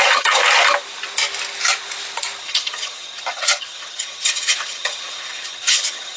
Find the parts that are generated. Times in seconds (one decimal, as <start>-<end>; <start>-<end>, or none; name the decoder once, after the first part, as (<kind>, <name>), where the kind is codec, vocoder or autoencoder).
0.0-0.4 (vocoder, HiFi-GAN); 2.4-6.2